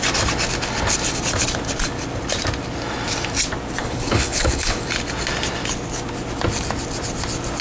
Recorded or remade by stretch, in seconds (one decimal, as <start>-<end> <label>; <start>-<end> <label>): 0.0-3.8 recorded; 3.8-4.8 remade; 4.8-7.6 recorded